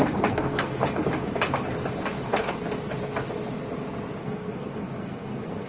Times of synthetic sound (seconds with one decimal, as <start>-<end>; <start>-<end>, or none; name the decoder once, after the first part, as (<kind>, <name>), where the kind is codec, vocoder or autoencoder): 0.0-0.8 (codec, SNAC); 4.2-5.7